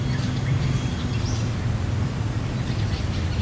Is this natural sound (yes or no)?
yes